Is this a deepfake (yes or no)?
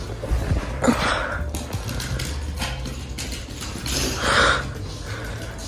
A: no